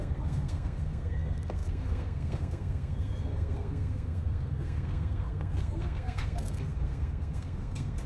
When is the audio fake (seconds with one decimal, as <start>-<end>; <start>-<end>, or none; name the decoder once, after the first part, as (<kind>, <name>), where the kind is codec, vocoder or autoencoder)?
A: 0.0-8.1 (codec, SNAC)